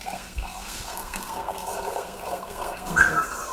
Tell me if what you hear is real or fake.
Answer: fake